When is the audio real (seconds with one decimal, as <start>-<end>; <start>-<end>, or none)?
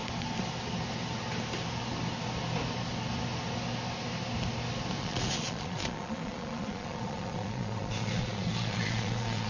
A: 0.0-5.0